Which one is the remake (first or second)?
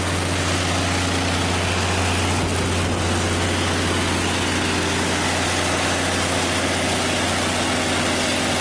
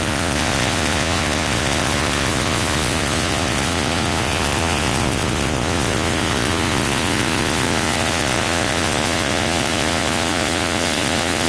second